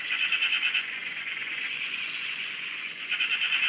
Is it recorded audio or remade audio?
remade